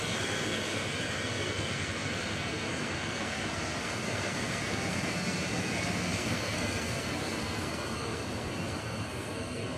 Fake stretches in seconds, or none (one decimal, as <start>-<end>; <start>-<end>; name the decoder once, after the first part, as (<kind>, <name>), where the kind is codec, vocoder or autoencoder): 0.0-9.8 (codec, SNAC)